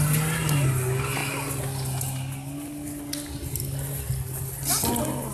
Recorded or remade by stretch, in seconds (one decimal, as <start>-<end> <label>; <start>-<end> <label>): 0.0-5.3 recorded